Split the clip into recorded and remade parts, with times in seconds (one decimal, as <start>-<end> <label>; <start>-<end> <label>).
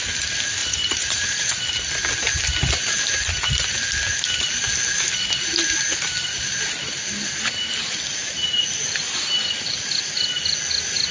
0.0-0.6 recorded; 0.6-1.6 remade; 1.6-11.1 recorded